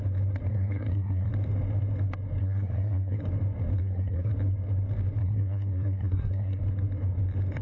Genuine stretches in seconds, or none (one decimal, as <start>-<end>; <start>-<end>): 0.0-0.5; 1.3-2.4; 3.2-3.8; 4.3-5.2; 6.6-7.6